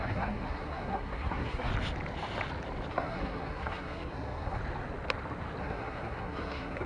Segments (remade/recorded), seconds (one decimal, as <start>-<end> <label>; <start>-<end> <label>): 0.0-1.7 remade; 1.7-2.9 recorded; 2.9-4.6 remade; 4.6-5.6 recorded; 5.6-6.9 remade